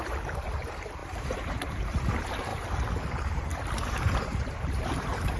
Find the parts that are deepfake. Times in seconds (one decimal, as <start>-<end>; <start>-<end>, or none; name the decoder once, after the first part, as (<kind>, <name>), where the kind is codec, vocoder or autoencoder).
0.0-2.5 (vocoder, BigVGAN v2); 3.1-5.4